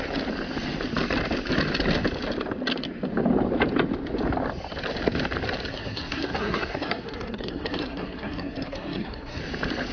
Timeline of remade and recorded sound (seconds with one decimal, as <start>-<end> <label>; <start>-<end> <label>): 0.0-5.7 recorded; 5.7-9.4 remade; 9.4-9.9 recorded